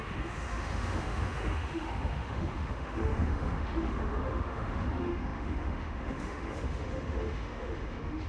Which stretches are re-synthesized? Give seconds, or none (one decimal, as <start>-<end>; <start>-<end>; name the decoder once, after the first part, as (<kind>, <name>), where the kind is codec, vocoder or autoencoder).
0.0-8.3 (autoencoder, DAC-VAE)